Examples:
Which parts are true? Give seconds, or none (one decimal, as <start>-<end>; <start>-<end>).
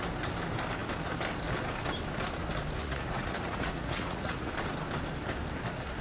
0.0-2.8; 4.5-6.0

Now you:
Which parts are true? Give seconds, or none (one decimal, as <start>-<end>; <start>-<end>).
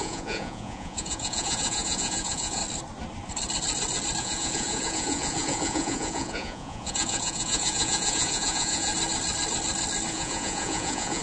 2.6-4.2; 8.9-10.1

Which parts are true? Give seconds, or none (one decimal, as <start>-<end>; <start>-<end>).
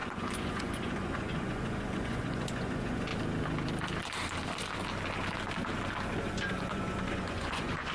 3.1-6.5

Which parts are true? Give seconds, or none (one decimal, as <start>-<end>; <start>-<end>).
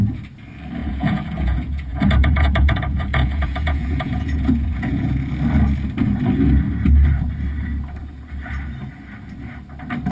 0.0-0.8; 5.3-10.1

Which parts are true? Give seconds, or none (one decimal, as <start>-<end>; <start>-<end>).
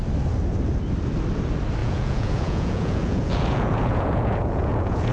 0.0-1.8